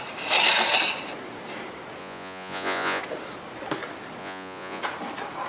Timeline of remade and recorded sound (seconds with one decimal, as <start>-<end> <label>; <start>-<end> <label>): 0.0-2.0 recorded; 2.0-3.0 remade; 3.0-4.2 recorded; 4.2-4.8 remade; 4.8-5.5 recorded